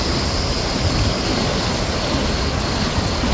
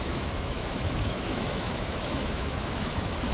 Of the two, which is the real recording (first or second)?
first